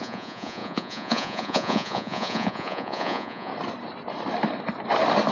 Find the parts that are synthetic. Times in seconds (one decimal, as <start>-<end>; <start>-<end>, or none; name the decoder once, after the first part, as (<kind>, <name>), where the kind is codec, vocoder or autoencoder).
0.0-3.5 (vocoder, Vocos)